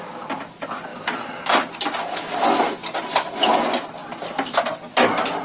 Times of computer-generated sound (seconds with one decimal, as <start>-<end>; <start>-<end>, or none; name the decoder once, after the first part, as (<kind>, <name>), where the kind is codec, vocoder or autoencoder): none

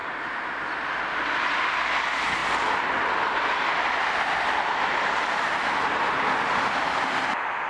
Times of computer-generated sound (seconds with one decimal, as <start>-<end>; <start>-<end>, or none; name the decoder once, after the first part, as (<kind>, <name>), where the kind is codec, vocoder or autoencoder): 0.0-0.6 (vocoder, BigVGAN v2)

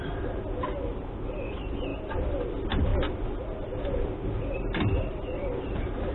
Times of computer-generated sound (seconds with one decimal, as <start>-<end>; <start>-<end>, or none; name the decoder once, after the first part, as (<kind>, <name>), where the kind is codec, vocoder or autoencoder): none

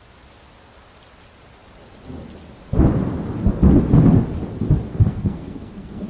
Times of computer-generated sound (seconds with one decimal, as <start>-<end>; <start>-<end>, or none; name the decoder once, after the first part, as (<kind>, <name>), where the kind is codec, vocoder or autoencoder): 4.9-6.1 (codec, SNAC)

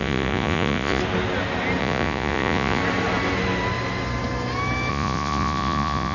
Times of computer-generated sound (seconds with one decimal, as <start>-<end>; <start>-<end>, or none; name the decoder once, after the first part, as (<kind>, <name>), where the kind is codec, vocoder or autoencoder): 0.0-1.0 (vocoder, Vocos); 1.8-2.8; 4.9-6.1

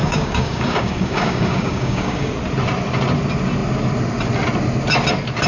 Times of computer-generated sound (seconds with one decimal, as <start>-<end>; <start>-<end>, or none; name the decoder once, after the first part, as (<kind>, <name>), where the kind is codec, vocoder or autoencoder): 0.0-2.3 (codec, DAC)

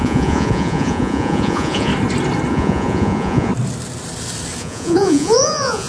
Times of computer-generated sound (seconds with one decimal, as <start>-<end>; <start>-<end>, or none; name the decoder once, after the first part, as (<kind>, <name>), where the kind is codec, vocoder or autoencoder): 0.0-1.9 (vocoder, Vocos); 2.5-3.5; 4.6-5.9